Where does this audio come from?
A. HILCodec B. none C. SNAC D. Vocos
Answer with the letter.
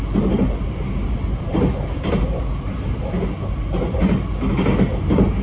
B